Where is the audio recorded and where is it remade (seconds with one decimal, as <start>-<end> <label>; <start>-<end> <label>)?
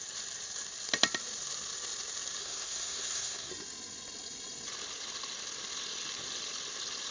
0.0-2.4 recorded; 2.4-3.5 remade; 3.5-7.1 recorded